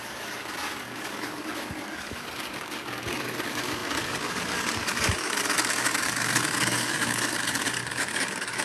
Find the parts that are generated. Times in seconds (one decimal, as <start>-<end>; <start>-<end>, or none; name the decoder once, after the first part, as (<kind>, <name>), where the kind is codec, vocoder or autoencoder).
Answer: 0.0-8.6 (codec, DAC)

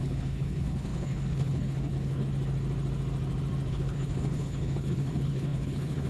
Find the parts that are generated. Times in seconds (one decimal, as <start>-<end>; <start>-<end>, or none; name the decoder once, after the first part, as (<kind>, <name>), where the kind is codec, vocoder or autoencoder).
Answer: 0.0-2.3 (codec, HILCodec); 3.7-6.1

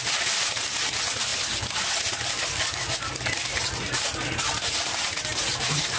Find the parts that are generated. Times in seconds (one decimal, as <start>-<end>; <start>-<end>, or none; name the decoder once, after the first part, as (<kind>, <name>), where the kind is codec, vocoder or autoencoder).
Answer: none

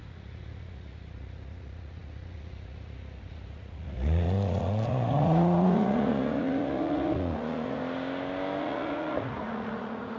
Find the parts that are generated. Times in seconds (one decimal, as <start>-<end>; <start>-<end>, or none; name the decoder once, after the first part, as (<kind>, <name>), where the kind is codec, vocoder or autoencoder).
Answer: 0.0-7.8 (vocoder, Vocos); 8.6-10.2

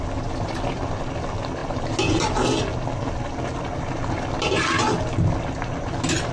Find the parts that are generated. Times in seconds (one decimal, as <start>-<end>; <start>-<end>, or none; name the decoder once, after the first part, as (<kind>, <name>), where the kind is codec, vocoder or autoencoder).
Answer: none

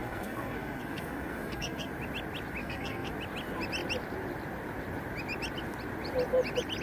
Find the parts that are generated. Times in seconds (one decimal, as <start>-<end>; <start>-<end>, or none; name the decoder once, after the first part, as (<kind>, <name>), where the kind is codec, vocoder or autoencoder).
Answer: 0.0-1.9 (codec, SNAC); 2.6-3.1